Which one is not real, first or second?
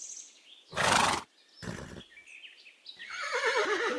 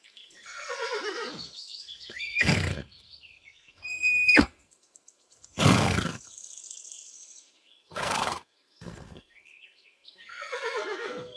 second